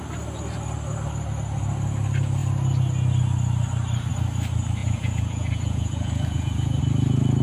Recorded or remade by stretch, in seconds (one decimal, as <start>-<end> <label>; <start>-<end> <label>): 0.0-4.8 recorded; 4.8-6.8 remade; 6.8-7.4 recorded